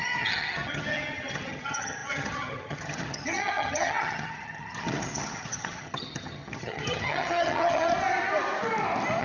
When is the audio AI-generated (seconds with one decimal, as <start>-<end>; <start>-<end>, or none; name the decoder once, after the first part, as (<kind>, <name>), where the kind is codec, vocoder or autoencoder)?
0.0-7.9 (vocoder, HiFi-GAN)